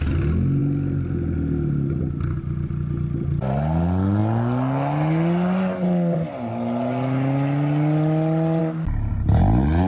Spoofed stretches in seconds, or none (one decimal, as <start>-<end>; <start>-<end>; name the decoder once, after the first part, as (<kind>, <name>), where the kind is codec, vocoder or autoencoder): none